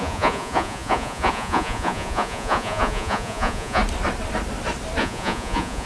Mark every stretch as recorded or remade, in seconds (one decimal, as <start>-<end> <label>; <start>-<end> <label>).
0.0-3.8 remade; 3.8-5.0 recorded; 5.0-5.9 remade